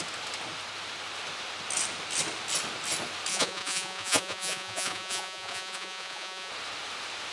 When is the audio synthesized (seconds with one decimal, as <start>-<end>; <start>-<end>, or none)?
3.3-6.5